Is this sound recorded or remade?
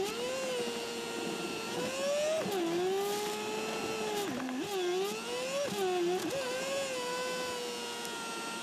recorded